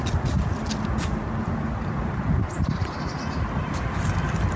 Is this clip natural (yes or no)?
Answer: yes